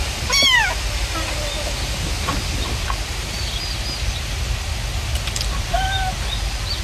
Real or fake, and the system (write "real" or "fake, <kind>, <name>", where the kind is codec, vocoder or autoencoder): real